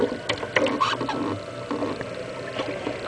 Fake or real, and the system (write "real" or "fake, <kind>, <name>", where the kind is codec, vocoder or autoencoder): real